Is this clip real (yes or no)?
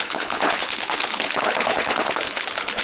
no